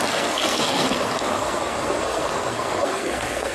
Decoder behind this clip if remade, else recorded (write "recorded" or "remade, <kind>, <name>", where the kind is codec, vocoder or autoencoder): remade, codec, SNAC